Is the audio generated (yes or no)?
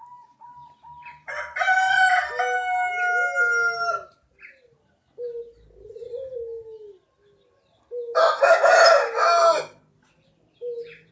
no